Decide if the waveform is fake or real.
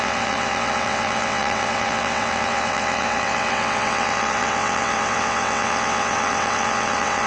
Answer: fake